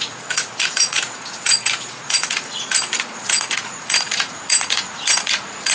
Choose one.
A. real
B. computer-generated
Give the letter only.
B